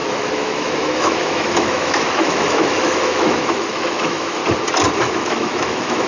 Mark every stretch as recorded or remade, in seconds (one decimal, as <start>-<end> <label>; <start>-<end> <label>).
0.0-4.4 remade; 4.4-5.0 recorded; 5.0-6.1 remade

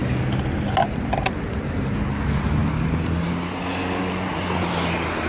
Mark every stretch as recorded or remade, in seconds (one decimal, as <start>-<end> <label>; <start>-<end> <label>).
0.0-5.3 recorded

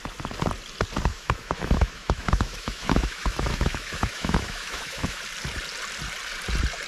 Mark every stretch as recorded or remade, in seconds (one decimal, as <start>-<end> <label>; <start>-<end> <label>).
0.0-1.1 recorded; 1.1-5.2 remade; 5.2-6.9 recorded

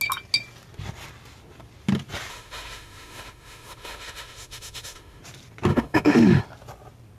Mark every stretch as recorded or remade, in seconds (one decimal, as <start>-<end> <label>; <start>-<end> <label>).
0.0-2.3 recorded; 2.3-5.2 remade; 5.2-5.7 recorded; 5.7-6.4 remade; 6.4-7.2 recorded

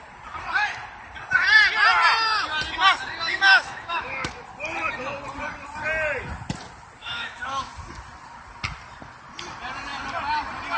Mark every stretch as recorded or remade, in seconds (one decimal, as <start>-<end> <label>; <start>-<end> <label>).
0.0-3.3 recorded; 3.3-4.3 remade; 4.3-7.0 recorded; 7.0-7.7 remade; 7.7-10.8 recorded

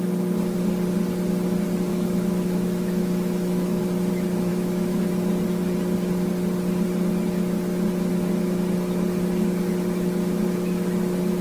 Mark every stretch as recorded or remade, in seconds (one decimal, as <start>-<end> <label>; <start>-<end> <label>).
0.0-1.9 recorded; 1.9-3.8 remade; 3.8-4.5 recorded; 4.5-5.0 remade; 5.0-11.4 recorded

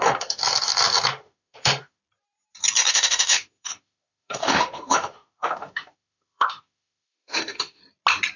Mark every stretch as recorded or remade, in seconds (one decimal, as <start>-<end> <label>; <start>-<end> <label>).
0.0-0.4 remade; 0.4-1.1 recorded; 1.1-2.0 remade; 2.0-2.9 recorded; 2.9-7.8 remade; 7.8-8.4 recorded